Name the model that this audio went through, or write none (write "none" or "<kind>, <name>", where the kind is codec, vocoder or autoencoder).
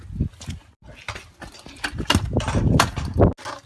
none